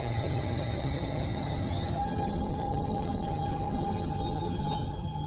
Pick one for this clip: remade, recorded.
remade